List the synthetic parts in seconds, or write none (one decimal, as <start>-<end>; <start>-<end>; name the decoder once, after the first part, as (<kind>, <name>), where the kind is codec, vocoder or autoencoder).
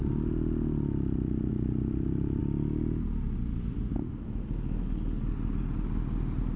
none